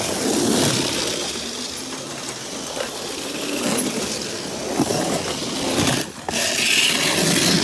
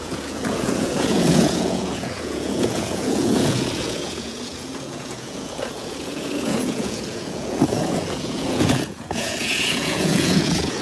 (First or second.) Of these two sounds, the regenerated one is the second